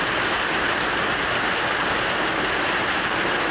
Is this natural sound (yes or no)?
yes